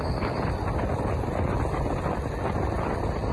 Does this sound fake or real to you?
real